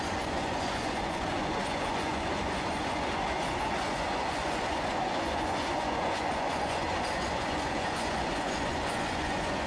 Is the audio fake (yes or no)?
yes